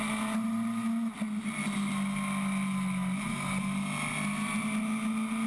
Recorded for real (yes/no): yes